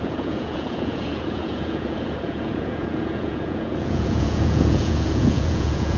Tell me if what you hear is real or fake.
fake